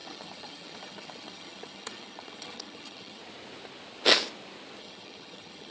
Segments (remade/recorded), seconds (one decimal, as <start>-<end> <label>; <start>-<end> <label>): 0.0-3.2 remade; 3.2-4.8 recorded; 4.8-5.7 remade